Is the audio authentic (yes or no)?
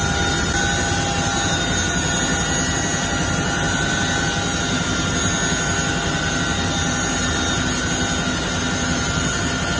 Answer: yes